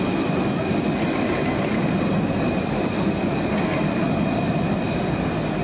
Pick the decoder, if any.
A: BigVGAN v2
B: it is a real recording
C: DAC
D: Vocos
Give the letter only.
B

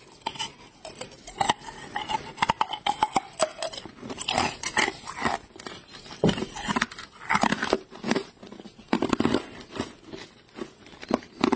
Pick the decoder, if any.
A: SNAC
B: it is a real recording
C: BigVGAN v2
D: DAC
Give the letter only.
B